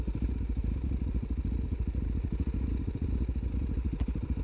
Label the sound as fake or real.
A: real